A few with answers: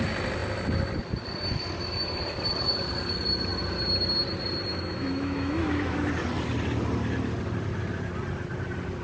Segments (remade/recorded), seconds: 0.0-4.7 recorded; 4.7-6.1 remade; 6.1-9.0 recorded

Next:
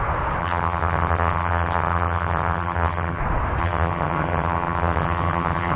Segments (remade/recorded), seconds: 0.0-0.4 recorded; 0.4-3.2 remade; 3.2-3.6 recorded; 3.6-5.8 remade

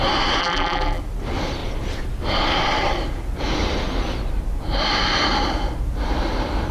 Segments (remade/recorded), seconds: 0.0-0.4 recorded; 0.4-1.0 remade; 1.0-6.7 recorded

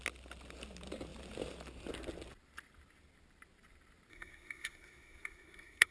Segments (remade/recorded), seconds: 0.0-4.1 recorded; 4.1-5.9 remade

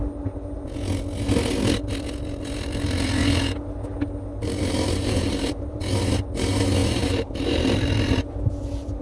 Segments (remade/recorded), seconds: 0.0-4.4 recorded; 4.4-5.8 remade; 5.8-6.8 recorded; 6.8-7.8 remade; 7.8-9.0 recorded

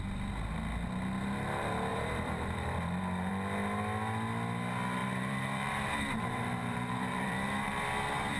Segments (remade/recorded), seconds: 0.0-1.9 recorded; 1.9-3.3 remade; 3.3-5.0 recorded; 5.0-7.8 remade; 7.8-8.4 recorded

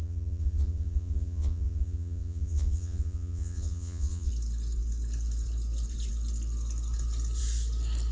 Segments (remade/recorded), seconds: 0.0-4.3 remade; 4.3-8.1 recorded

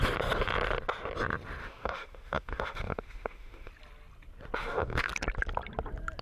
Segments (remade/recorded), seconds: 0.0-1.6 recorded; 1.6-3.7 remade; 3.7-4.6 recorded; 4.6-5.1 remade; 5.1-6.2 recorded